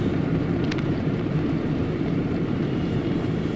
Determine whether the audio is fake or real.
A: fake